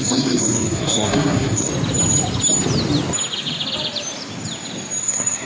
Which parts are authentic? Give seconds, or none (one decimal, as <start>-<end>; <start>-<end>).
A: 1.7-5.0